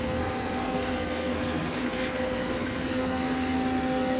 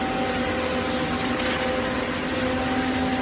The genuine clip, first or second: second